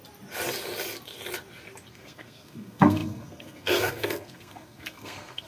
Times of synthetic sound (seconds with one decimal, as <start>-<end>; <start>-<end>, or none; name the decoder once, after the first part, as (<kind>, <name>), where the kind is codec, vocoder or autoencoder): 1.9-5.5 (codec, SNAC)